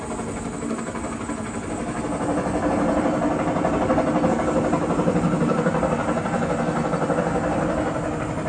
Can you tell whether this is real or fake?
real